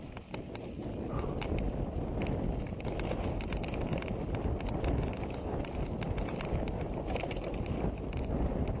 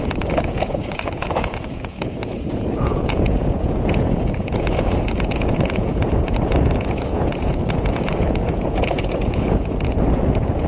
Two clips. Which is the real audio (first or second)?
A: first